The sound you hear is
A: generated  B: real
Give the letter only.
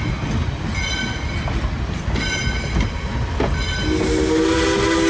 B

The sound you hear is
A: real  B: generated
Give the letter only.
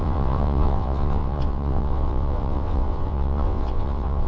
B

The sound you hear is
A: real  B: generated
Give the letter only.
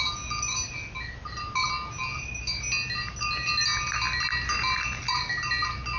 A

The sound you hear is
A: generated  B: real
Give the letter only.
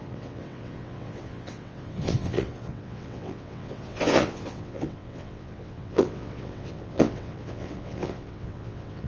A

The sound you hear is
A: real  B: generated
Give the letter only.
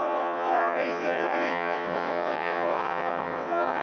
B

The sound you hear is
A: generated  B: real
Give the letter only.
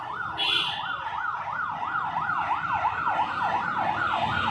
B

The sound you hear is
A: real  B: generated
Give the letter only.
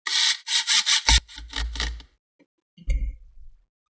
A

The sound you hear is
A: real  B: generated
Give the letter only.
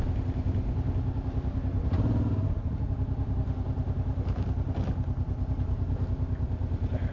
A